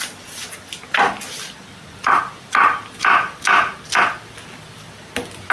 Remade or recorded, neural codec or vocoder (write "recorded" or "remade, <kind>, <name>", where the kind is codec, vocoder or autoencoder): recorded